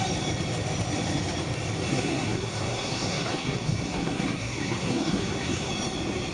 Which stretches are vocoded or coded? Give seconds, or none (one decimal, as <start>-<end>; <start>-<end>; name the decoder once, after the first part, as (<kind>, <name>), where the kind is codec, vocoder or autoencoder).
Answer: 1.9-5.7 (codec, SNAC)